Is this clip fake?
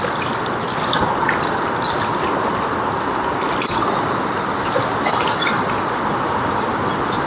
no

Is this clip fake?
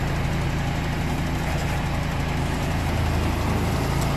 no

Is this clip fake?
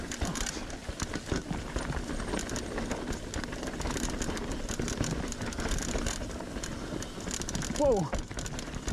no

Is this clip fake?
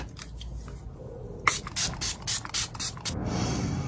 no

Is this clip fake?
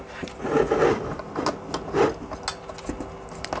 no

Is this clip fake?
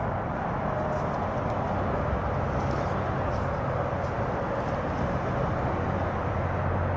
no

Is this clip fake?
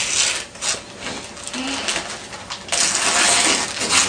no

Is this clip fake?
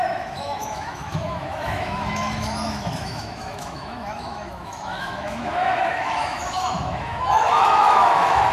yes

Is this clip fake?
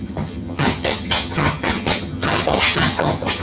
yes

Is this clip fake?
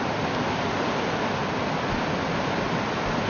no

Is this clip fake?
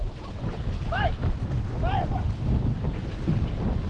no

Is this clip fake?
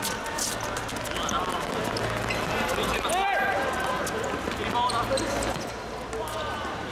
no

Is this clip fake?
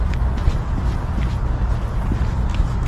no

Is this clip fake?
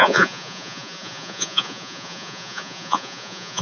yes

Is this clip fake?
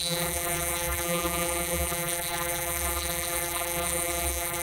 yes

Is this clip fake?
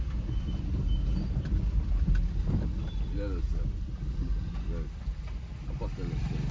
no